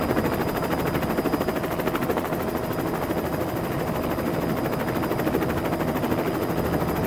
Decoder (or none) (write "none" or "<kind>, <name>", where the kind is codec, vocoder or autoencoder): none